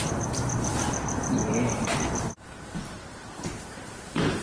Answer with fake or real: fake